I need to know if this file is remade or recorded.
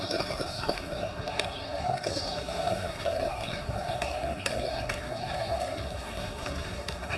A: remade